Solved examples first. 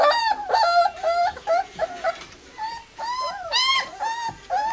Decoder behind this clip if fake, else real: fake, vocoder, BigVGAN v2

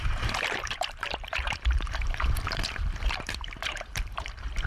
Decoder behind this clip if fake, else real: fake, vocoder, BigVGAN v2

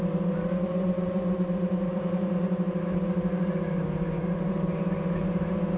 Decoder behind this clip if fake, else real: fake, vocoder, BigVGAN v2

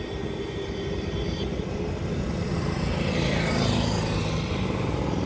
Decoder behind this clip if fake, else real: real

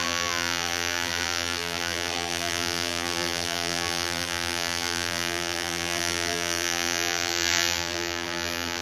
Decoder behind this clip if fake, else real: fake, vocoder, BigVGAN v2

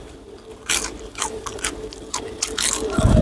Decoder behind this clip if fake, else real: real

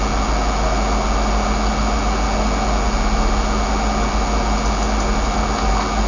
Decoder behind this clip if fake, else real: real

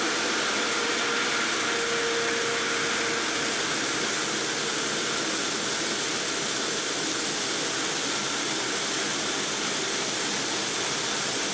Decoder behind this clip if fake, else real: real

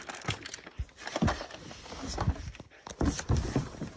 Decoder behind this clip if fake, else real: fake, vocoder, BigVGAN v2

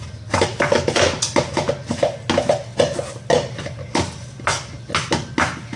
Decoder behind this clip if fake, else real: real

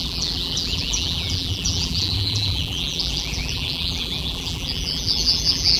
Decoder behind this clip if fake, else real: fake, vocoder, BigVGAN v2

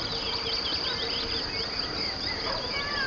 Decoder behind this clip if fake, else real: real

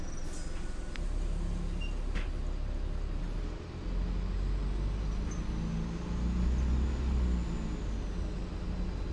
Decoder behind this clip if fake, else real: real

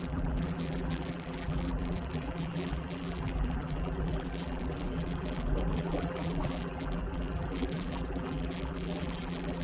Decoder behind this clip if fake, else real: fake, vocoder, BigVGAN v2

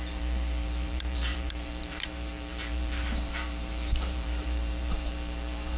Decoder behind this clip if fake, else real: fake, vocoder, BigVGAN v2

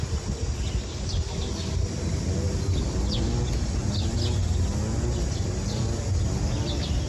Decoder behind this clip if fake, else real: real